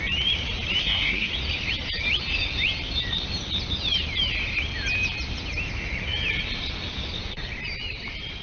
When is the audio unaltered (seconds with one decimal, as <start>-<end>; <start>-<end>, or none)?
0.0-0.8; 1.3-8.4